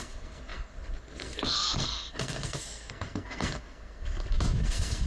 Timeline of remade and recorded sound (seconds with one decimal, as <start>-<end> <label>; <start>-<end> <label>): 0.0-5.1 remade